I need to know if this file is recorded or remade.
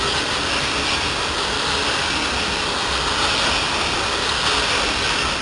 recorded